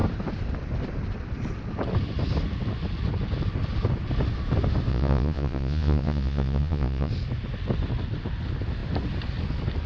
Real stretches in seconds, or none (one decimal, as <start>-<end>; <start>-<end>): 0.0-4.9; 7.1-9.9